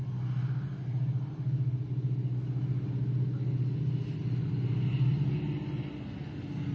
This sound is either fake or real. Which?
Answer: real